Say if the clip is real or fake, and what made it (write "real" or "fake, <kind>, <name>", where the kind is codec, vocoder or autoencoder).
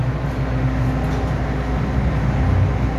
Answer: real